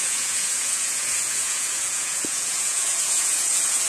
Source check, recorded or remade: remade